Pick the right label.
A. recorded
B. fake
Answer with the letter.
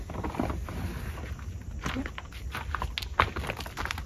A